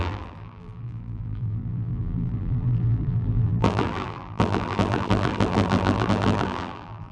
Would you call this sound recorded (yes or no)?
no